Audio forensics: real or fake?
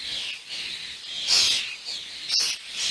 real